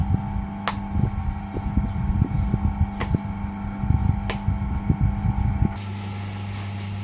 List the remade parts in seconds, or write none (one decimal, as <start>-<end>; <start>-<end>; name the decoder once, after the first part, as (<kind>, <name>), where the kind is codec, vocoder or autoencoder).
none